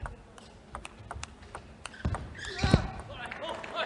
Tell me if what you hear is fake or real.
real